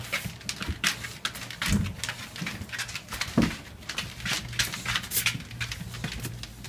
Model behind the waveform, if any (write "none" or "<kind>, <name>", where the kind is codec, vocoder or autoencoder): none